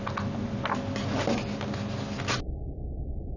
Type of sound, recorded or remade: recorded